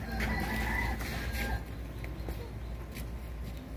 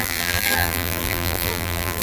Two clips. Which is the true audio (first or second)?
first